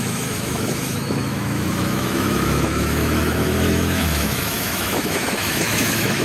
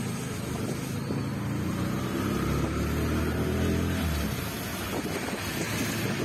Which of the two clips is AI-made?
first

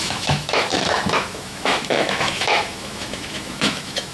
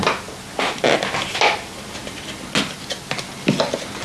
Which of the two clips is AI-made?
first